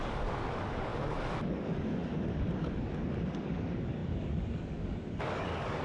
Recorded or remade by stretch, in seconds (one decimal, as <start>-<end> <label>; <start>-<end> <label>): 0.0-5.8 remade